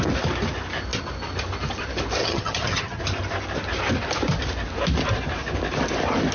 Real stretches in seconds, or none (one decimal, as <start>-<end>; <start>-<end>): 0.0-2.2; 3.0-6.3